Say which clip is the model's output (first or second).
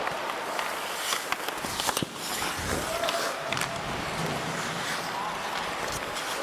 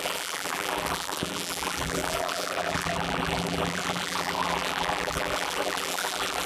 second